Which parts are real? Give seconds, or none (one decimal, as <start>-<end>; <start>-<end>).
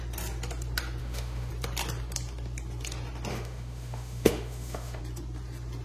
0.0-1.0; 1.5-3.3; 5.0-5.8